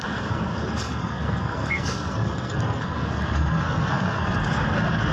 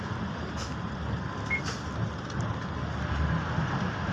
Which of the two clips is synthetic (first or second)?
first